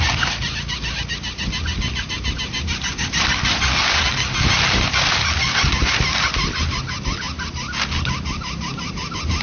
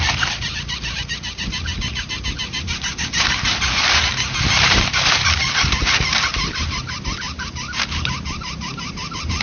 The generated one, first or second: second